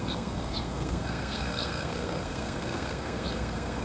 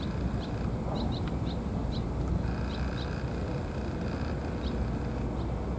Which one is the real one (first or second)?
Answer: second